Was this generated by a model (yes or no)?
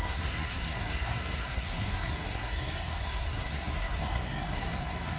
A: yes